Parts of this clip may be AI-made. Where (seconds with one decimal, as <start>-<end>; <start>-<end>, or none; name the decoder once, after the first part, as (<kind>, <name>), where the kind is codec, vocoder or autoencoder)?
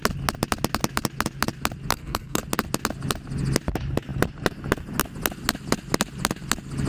1.9-2.4 (codec, SNAC)